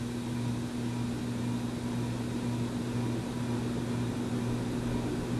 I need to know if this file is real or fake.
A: real